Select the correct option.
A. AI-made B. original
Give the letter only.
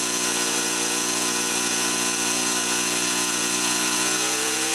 A